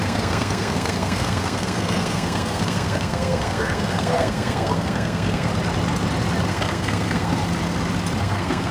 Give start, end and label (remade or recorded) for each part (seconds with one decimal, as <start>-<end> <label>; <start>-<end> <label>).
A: 0.0-5.5 remade; 5.5-6.5 recorded; 6.5-7.4 remade; 7.4-8.2 recorded; 8.2-8.7 remade